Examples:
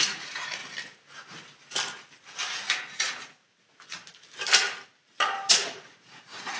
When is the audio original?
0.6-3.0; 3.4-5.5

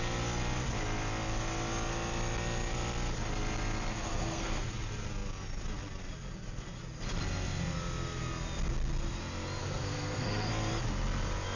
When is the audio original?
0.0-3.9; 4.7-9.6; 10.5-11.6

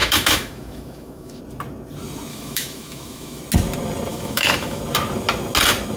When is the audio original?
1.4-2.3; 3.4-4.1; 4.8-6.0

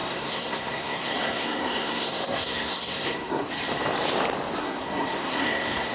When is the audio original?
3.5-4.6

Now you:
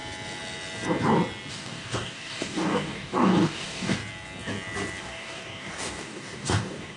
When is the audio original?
0.0-1.5; 4.0-5.0

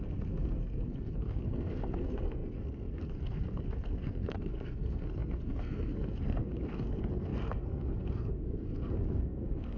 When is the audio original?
none

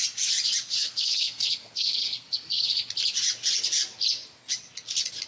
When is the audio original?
0.0-0.7; 2.8-5.3